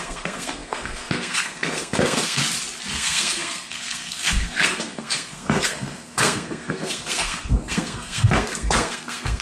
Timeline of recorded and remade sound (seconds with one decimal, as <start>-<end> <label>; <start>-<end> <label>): 0.0-2.4 remade; 2.4-2.9 recorded; 2.9-9.4 remade